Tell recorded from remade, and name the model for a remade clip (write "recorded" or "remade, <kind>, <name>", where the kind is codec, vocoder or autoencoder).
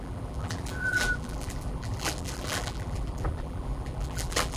remade, vocoder, BigVGAN v2